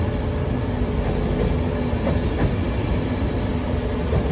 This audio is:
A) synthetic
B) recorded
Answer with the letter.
B